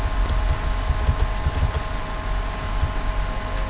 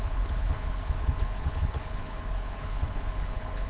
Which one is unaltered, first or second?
first